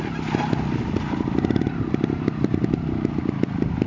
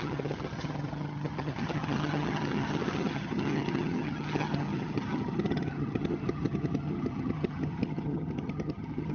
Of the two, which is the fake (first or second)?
second